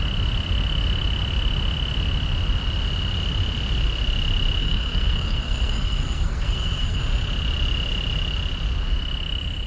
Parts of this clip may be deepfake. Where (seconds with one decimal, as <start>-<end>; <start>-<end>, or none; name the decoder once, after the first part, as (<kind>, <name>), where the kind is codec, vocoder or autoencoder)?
4.6-7.0 (codec, SNAC)